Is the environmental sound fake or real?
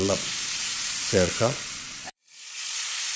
fake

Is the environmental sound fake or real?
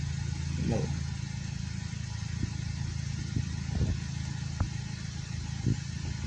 real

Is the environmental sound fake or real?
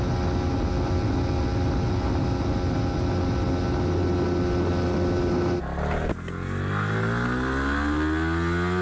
real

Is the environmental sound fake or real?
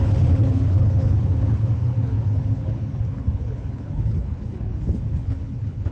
fake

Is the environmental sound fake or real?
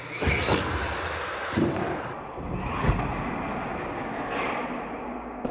real